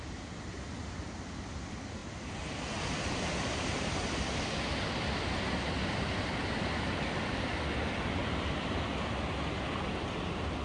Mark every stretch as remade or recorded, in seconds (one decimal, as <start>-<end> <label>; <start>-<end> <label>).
0.0-10.6 recorded